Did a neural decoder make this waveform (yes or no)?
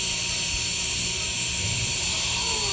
no